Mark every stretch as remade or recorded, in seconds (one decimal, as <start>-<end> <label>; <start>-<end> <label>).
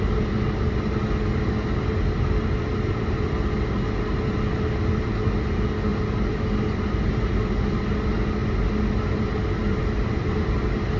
0.0-11.0 recorded